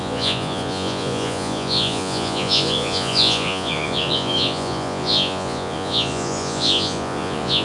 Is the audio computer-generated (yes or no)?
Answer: yes